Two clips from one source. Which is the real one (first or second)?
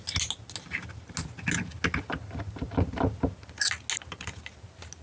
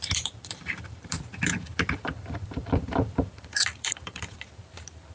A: first